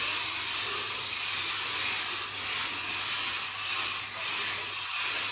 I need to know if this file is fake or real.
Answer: real